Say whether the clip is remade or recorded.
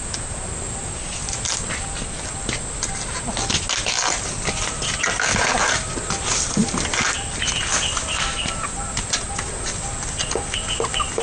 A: recorded